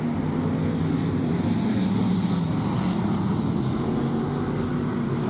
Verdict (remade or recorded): recorded